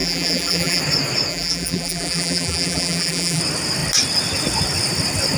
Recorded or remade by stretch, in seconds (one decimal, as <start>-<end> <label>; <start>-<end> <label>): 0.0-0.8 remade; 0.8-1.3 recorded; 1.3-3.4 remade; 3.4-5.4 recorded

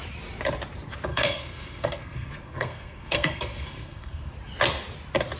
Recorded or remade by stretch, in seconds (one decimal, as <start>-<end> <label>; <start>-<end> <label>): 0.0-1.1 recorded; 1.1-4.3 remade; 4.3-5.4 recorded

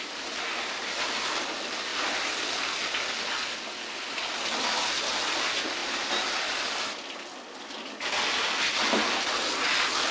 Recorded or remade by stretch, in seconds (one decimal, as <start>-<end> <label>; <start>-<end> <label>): 0.0-1.9 recorded; 1.9-2.5 remade; 2.5-10.1 recorded